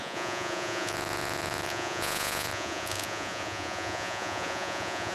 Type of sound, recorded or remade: remade